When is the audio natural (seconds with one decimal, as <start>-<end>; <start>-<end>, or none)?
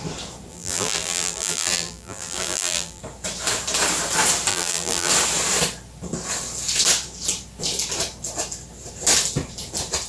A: 0.0-0.5; 3.0-4.5; 5.1-10.1